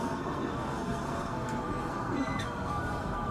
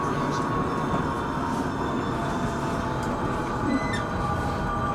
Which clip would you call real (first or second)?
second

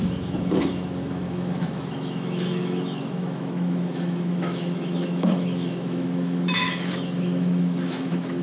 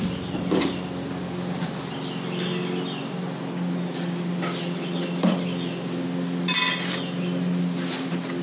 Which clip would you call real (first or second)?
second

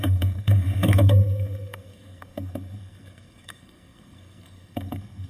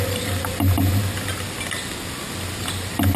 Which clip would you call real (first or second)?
second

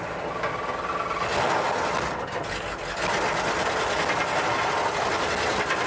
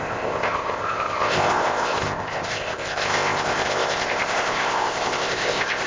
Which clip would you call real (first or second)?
first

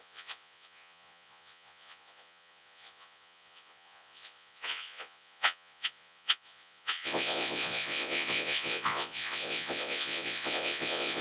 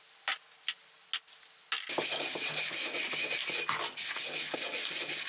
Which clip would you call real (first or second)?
second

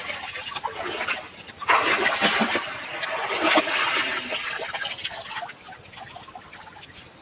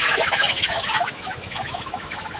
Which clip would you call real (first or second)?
first